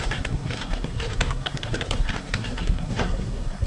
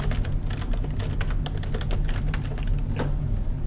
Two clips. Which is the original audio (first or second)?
second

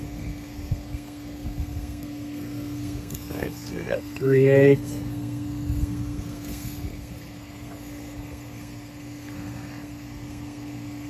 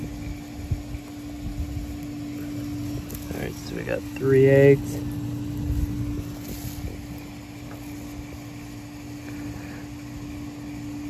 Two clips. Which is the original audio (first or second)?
second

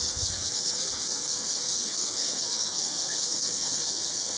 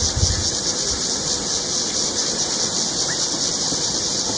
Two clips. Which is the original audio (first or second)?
second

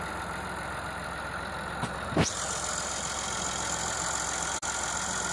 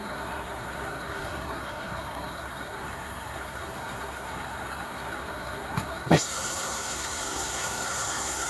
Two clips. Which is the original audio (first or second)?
first